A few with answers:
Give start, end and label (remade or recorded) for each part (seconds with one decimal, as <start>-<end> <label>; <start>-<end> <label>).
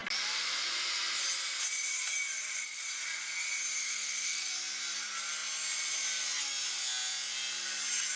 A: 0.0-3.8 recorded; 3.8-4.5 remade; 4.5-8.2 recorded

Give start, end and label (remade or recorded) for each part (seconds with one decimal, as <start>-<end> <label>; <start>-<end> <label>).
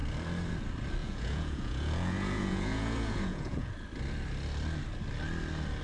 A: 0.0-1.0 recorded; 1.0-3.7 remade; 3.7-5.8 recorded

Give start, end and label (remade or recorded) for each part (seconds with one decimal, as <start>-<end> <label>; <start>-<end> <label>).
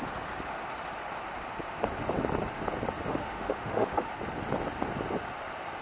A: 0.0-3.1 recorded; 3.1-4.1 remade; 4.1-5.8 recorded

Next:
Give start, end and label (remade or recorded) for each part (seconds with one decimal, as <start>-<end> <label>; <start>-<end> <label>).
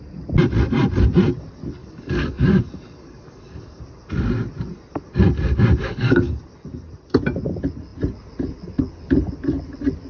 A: 0.0-1.8 recorded; 1.8-3.8 remade; 3.8-5.8 recorded; 5.8-6.4 remade; 6.4-10.1 recorded